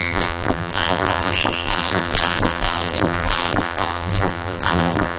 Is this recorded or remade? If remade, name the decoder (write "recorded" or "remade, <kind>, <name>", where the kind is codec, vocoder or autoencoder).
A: remade, vocoder, BigVGAN v2